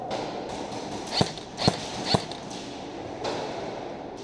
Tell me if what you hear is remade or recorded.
recorded